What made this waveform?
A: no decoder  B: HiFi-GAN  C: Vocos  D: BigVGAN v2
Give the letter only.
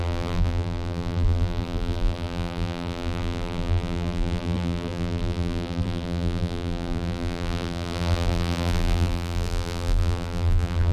D